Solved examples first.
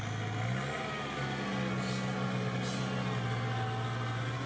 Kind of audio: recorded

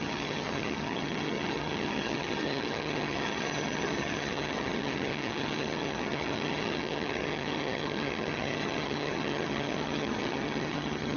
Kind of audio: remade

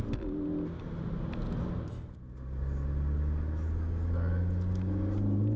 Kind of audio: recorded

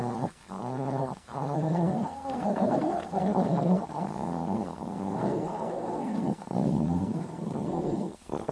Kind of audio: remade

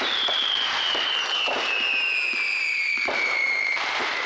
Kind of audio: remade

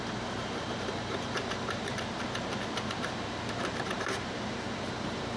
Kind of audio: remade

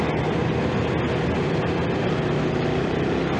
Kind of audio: recorded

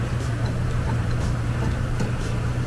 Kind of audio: remade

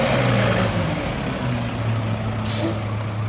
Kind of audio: recorded